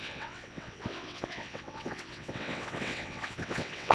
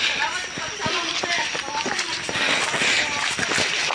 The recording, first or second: second